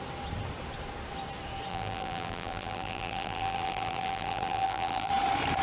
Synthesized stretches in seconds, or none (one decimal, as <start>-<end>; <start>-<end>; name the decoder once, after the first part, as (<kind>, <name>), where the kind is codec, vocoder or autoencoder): 1.7-5.1 (vocoder, BigVGAN v2)